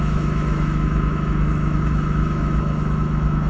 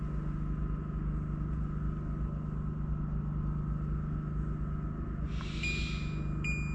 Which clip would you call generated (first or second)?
first